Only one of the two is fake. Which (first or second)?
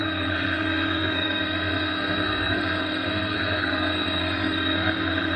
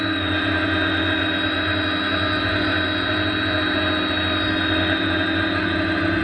first